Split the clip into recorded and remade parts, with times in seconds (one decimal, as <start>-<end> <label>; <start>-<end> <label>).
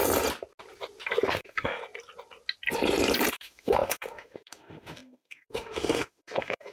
0.0-1.3 recorded; 1.3-1.8 remade; 1.8-3.3 recorded; 3.3-6.7 remade